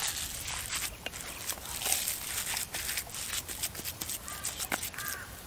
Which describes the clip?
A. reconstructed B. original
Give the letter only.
B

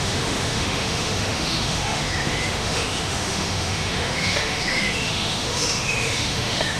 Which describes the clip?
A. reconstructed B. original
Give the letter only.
A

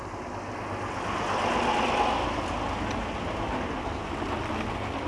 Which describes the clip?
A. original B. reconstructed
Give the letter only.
A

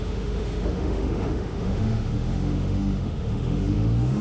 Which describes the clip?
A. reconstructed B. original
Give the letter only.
A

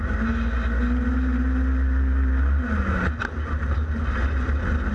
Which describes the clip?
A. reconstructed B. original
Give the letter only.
B